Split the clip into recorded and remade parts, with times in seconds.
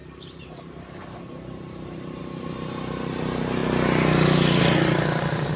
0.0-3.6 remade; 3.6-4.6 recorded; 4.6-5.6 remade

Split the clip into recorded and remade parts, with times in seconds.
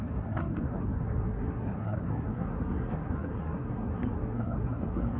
0.0-5.2 remade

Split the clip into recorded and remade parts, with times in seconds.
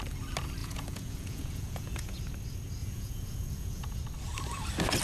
0.0-0.6 recorded; 0.6-2.2 remade; 2.2-2.8 recorded; 2.8-4.0 remade; 4.0-5.0 recorded